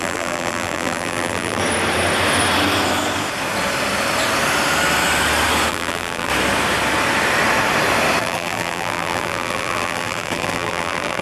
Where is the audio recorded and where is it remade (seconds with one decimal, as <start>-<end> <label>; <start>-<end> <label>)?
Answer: 0.0-1.6 remade; 1.6-5.7 recorded; 5.7-6.3 remade; 6.3-8.2 recorded; 8.2-11.2 remade

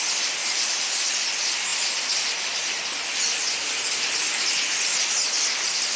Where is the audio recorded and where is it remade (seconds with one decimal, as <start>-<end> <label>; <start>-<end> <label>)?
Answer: 0.0-0.4 recorded; 0.4-1.1 remade; 1.1-6.0 recorded

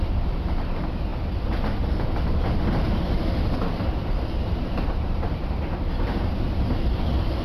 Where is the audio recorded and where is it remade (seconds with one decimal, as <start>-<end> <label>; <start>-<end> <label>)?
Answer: 0.0-1.1 remade; 1.1-4.4 recorded; 4.4-7.4 remade